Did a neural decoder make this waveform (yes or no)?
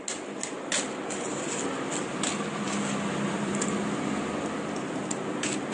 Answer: no